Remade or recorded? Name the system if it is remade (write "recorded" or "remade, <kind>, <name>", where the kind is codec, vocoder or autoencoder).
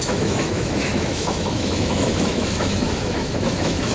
remade, autoencoder, DAC-VAE